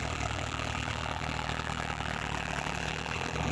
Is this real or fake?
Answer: fake